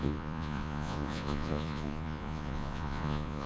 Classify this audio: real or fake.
fake